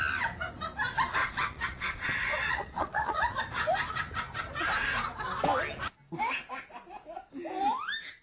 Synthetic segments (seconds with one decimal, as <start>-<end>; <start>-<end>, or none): 1.2-3.4